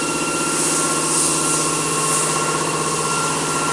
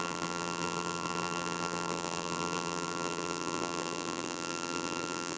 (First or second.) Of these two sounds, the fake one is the second